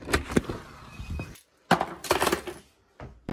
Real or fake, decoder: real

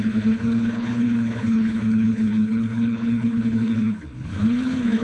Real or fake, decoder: fake, codec, HILCodec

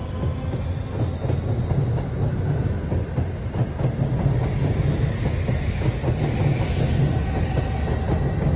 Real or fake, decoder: real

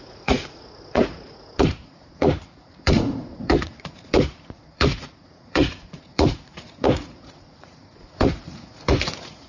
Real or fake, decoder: fake, vocoder, Vocos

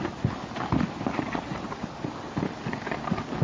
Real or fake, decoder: real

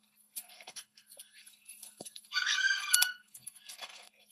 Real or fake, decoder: fake, codec, SNAC